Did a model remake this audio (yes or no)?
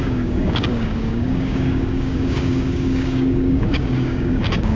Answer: yes